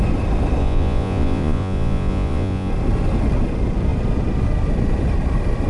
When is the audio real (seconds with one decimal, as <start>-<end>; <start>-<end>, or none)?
0.0-0.6; 2.7-5.7